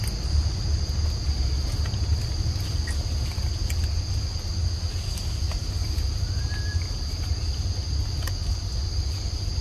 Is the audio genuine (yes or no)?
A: yes